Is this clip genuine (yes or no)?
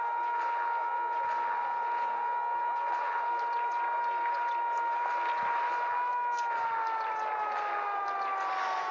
yes